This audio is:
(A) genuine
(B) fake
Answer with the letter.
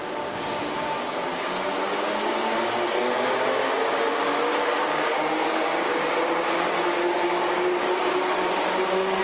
B